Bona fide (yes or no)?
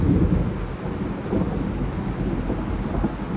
yes